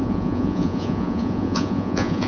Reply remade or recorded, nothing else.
remade